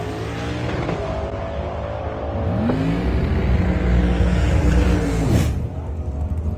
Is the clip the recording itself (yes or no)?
yes